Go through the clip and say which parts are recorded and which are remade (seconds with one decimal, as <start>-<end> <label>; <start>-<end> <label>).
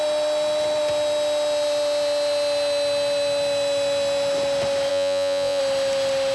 0.0-4.9 recorded; 4.9-5.6 remade; 5.6-6.3 recorded